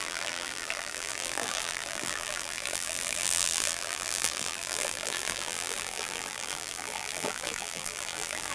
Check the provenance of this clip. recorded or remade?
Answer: remade